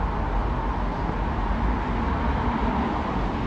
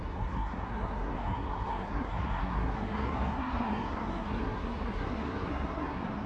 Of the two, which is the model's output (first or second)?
second